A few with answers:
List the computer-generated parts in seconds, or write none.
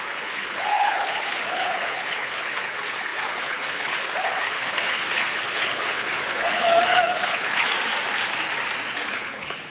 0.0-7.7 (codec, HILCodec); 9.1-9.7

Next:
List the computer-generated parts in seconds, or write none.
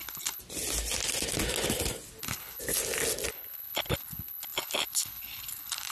0.0-0.4 (codec, HILCodec); 2.2-2.6; 3.3-5.9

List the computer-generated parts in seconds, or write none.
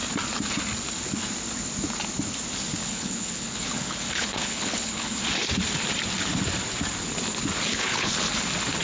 2.8-5.2 (codec, HILCodec); 7.7-8.2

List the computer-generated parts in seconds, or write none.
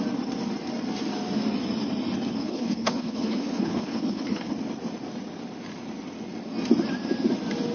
2.4-4.5 (codec, HILCodec)